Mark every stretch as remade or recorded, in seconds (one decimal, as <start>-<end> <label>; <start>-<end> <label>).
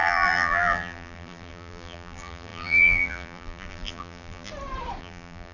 0.0-4.5 remade; 4.5-5.0 recorded; 5.0-5.5 remade